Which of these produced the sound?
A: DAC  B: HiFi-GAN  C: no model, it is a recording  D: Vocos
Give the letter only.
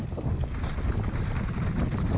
C